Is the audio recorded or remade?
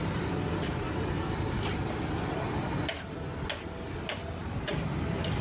recorded